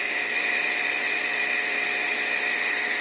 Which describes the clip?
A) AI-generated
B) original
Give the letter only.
B